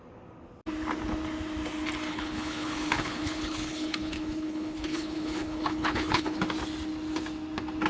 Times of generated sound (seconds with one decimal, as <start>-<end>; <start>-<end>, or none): 2.1-6.4